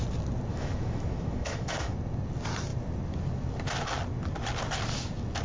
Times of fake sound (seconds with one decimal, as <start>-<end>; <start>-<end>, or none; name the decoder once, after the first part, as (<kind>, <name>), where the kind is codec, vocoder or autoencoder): 0.5-1.9 (autoencoder, DAC-VAE)